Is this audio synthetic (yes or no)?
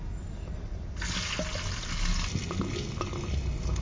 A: no